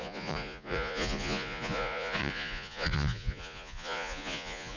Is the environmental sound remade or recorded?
remade